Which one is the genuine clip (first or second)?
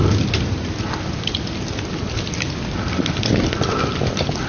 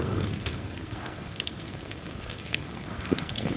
first